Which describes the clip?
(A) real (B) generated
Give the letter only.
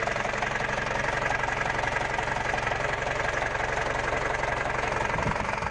A